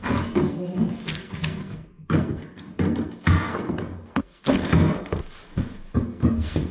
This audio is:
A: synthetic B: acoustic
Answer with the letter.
A